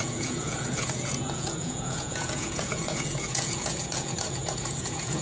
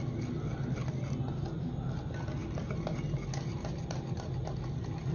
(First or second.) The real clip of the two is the second